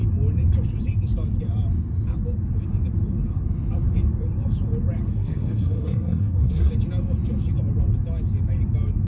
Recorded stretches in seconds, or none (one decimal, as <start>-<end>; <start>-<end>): 0.0-5.1; 6.7-9.1